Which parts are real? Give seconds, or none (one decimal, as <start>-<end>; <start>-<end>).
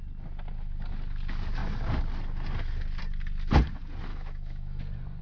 0.0-4.1; 4.8-5.2